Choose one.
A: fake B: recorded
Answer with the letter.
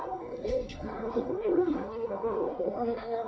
A